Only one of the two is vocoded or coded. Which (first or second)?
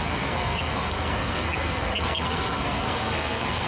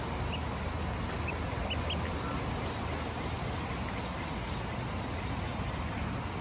first